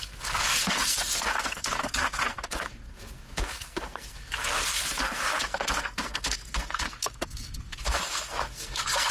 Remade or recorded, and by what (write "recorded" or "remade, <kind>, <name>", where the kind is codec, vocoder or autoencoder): remade, codec, SNAC